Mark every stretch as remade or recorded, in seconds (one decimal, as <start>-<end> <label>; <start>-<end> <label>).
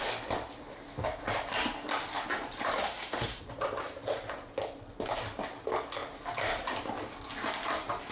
0.0-2.8 recorded; 2.8-3.4 remade; 3.4-8.1 recorded